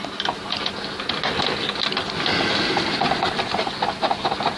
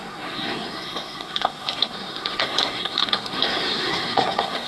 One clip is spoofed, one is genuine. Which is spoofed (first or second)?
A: second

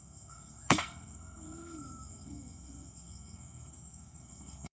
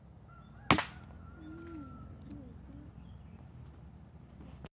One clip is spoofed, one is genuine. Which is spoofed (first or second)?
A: first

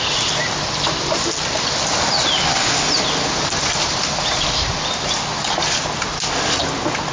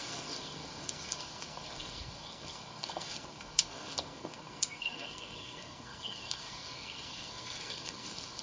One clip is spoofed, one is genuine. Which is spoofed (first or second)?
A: second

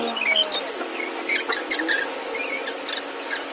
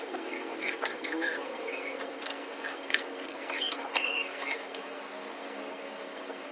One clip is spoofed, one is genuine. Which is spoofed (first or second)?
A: second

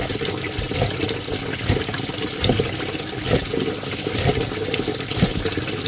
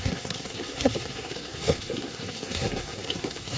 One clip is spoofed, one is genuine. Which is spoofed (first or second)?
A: second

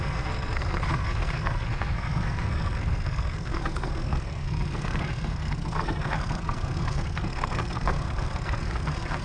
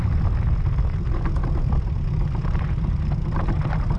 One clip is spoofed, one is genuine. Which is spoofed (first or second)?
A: first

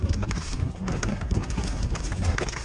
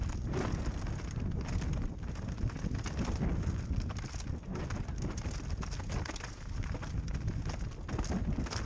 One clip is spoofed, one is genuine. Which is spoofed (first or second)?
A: first